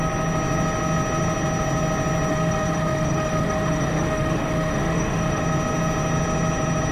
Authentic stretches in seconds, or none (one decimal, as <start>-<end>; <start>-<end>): 0.0-2.3; 5.4-6.9